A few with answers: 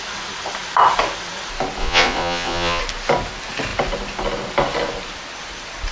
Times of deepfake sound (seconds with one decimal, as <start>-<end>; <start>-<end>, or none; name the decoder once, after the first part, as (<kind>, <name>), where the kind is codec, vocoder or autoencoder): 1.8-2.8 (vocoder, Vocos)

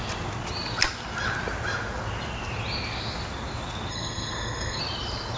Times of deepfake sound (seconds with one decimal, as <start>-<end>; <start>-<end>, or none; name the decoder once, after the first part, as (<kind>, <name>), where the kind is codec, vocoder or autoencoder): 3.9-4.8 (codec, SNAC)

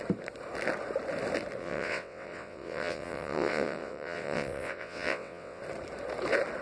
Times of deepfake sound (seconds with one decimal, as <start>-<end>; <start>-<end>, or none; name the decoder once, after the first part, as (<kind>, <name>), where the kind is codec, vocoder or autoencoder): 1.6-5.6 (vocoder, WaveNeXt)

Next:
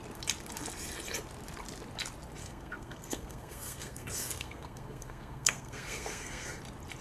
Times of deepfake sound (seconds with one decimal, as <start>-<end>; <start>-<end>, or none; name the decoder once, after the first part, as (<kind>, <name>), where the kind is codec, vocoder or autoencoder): 2.4-6.6 (codec, SNAC)

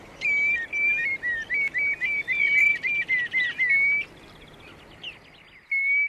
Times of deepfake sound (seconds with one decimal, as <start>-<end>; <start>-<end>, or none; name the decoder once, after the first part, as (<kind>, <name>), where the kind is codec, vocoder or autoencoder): 2.6-3.1 (vocoder, BigVGAN v2)

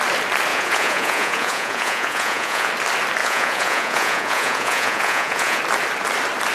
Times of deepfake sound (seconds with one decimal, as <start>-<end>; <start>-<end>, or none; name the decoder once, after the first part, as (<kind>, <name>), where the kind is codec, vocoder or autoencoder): 0.5-2.7 (vocoder, Vocos); 3.2-5.6